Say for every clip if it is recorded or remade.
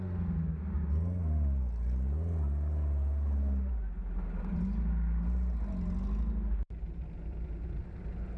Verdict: recorded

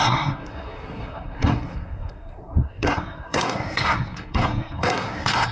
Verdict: remade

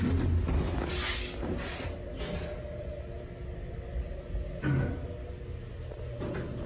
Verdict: recorded